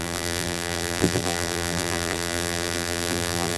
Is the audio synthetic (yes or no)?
yes